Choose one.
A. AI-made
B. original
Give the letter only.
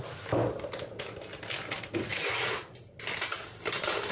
B